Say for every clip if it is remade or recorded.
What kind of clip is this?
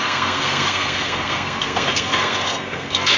remade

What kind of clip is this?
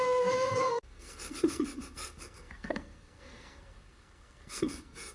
remade